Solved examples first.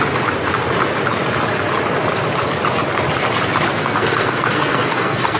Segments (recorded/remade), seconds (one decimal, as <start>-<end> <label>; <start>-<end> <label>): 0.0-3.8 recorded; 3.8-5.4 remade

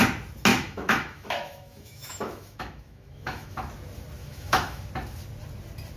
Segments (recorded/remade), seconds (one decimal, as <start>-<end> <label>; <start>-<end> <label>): 0.0-0.5 recorded; 0.5-3.7 remade; 3.7-4.2 recorded; 4.2-4.9 remade; 4.9-6.0 recorded

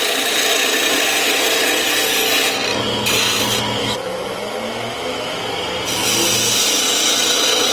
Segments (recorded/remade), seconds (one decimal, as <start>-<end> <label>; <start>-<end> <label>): 0.0-3.8 recorded; 3.8-5.4 remade; 5.4-7.7 recorded

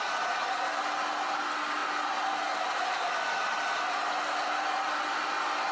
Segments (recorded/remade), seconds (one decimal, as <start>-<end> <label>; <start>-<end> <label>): 0.0-5.7 recorded